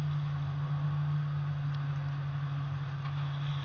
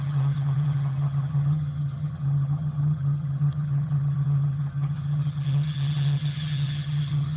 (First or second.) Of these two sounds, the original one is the first